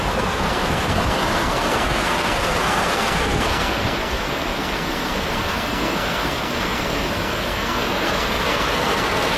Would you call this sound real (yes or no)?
no